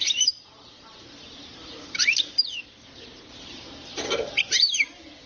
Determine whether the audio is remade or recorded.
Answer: remade